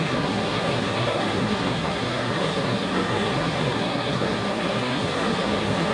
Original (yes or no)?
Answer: no